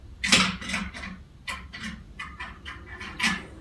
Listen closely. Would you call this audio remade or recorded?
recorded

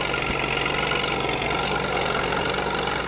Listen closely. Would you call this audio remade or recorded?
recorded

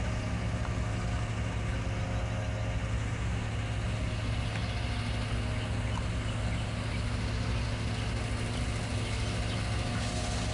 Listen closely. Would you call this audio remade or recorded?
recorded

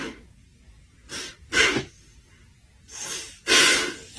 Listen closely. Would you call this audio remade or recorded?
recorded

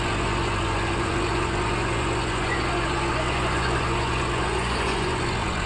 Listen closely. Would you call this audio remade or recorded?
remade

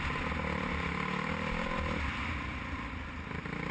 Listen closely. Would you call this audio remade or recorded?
recorded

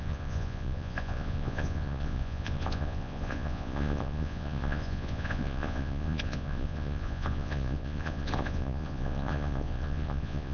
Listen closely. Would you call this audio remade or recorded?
remade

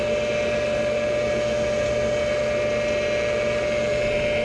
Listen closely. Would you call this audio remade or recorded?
recorded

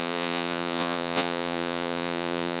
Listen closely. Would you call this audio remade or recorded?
remade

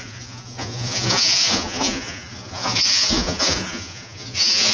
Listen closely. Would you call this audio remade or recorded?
remade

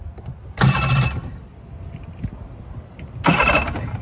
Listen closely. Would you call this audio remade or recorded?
recorded